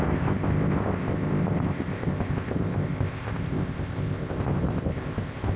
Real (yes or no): no